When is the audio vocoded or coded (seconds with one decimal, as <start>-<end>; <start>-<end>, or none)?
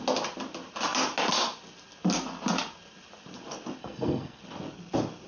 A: 3.8-4.4